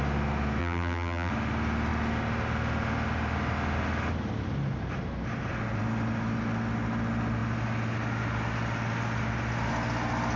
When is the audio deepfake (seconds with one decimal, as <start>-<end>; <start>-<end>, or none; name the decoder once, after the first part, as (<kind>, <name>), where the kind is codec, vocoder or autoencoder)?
0.6-1.3 (vocoder, BigVGAN v2)